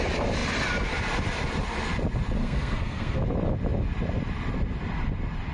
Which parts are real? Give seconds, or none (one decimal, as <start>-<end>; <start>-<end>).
0.0-2.4; 3.2-5.5